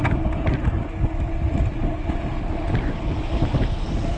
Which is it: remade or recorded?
recorded